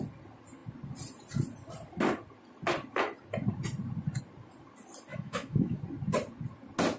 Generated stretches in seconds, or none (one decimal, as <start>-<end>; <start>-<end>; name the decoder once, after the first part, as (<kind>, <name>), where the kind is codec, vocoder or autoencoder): 5.1-5.8 (autoencoder, DAC-VAE)